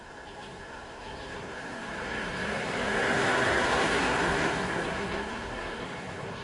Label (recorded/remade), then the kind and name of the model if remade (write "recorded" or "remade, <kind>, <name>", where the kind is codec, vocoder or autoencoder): remade, codec, SNAC